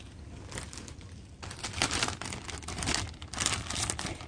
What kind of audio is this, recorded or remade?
recorded